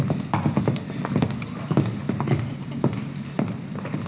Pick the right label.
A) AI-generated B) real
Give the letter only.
B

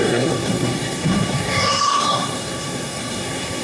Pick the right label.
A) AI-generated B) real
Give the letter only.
A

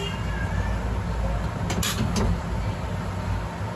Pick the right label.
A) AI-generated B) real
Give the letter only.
B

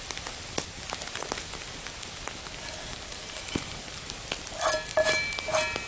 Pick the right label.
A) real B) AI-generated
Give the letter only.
A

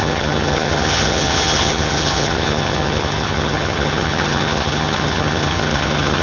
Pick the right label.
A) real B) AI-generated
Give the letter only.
B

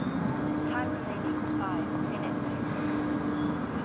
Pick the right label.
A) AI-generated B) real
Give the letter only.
B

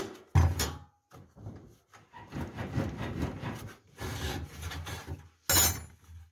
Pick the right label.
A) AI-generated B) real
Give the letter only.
B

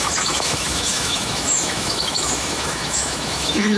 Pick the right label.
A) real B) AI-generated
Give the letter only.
B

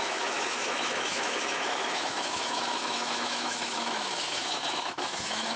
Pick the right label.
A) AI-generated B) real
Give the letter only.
A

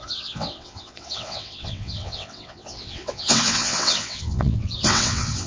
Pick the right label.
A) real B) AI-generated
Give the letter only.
B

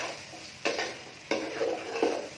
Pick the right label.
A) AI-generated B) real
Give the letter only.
B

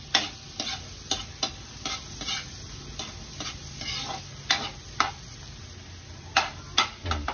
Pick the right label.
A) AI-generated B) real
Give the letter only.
B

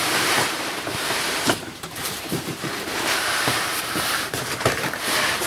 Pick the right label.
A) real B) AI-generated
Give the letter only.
B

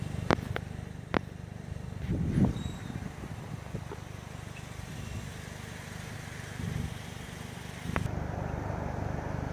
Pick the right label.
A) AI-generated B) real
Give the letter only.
B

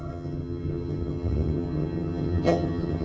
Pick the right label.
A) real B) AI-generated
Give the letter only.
B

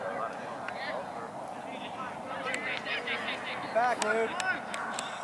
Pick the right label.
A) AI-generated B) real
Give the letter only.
B